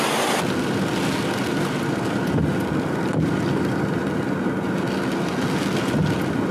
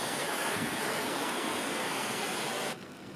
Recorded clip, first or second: first